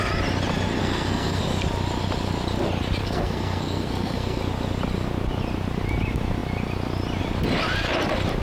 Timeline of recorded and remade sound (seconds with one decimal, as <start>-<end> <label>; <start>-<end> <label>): 0.0-0.8 recorded; 0.8-1.4 remade; 1.4-3.0 recorded; 3.0-4.4 remade; 4.4-8.4 recorded